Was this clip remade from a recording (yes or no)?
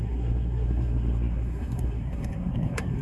yes